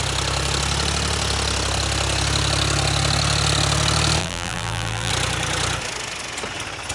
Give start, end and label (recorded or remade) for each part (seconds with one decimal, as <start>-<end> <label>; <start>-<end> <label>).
0.0-4.2 recorded; 4.2-5.1 remade; 5.1-6.9 recorded